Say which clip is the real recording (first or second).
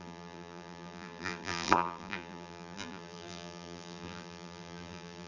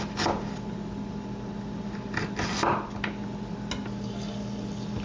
second